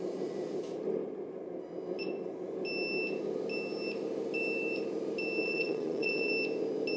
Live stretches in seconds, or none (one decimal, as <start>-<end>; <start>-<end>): 0.0-5.4; 6.3-7.0